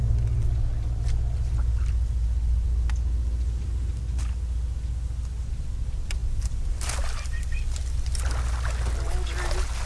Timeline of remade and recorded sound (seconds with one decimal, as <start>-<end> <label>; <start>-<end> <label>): 0.0-9.9 recorded